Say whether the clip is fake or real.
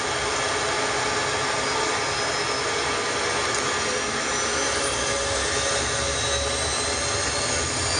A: real